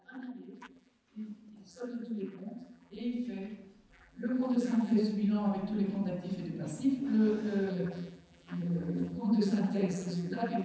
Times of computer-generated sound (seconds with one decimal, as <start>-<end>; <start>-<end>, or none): 0.0-0.9; 1.7-3.0; 3.9-5.0; 7.7-10.6